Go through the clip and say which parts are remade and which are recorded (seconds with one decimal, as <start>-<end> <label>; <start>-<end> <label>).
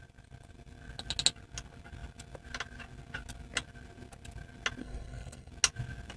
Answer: 0.0-4.8 recorded; 4.8-5.5 remade; 5.5-6.2 recorded